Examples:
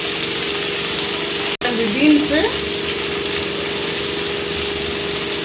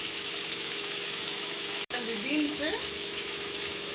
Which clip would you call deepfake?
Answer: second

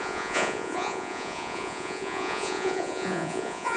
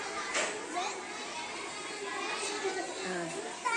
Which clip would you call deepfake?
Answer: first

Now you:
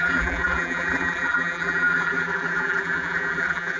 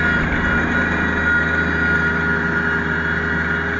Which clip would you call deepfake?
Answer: first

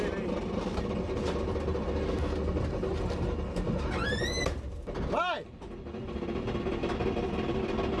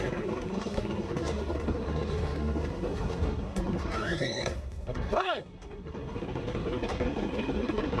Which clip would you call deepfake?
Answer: second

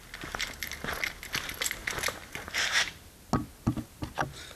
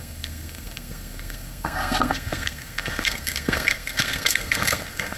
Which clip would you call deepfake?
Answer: second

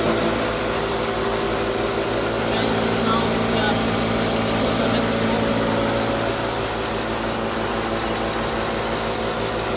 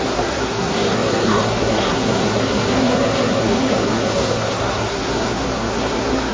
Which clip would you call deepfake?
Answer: second